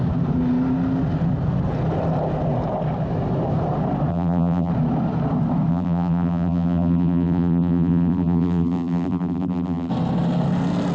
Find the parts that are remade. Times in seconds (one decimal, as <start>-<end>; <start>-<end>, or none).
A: 4.1-4.7; 5.7-9.9